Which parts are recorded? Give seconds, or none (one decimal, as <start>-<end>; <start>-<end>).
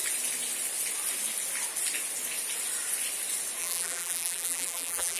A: 0.0-3.6